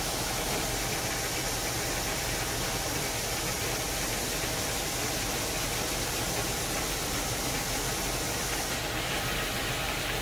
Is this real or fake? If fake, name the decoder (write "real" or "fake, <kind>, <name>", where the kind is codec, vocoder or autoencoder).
real